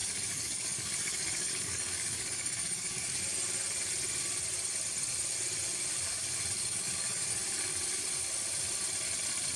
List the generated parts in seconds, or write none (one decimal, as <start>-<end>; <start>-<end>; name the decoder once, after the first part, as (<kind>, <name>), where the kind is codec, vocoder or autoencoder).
0.0-3.2 (codec, DAC); 6.6-7.3